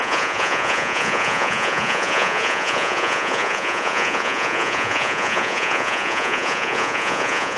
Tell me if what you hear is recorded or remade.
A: remade